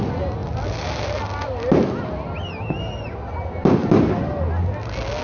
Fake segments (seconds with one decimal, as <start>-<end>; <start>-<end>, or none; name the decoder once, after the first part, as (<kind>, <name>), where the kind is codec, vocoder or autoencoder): none